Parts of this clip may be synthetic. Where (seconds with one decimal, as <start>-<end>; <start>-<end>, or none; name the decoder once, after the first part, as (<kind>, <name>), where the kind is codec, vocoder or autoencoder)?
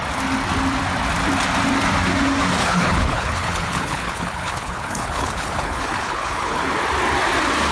2.6-6.7 (codec, HILCodec)